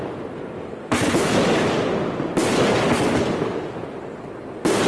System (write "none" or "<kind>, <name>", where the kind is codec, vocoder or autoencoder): none